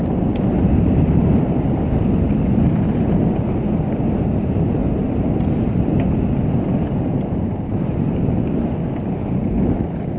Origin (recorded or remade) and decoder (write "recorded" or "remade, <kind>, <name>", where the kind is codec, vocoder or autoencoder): recorded